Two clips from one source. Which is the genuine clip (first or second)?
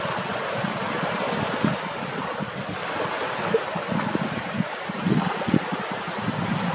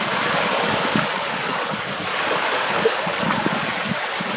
first